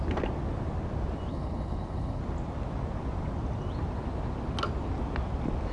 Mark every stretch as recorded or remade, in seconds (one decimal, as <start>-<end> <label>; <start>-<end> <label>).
0.0-1.3 recorded; 1.3-2.2 remade; 2.2-5.7 recorded